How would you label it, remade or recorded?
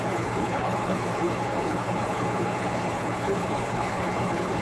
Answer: remade